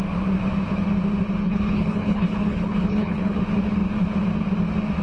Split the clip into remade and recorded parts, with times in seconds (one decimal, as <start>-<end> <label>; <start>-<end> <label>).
0.0-1.4 recorded; 1.4-3.4 remade; 3.4-5.0 recorded